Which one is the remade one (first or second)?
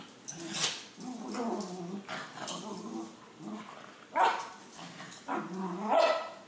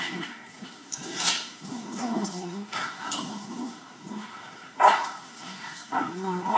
second